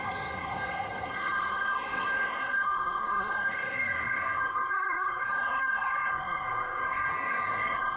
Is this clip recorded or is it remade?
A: remade